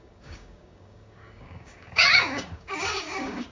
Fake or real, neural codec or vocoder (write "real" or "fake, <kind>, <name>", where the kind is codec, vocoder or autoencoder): fake, codec, DAC